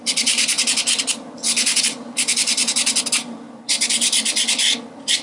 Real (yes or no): yes